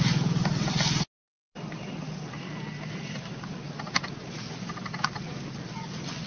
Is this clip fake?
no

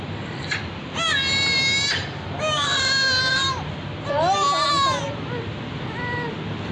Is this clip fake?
no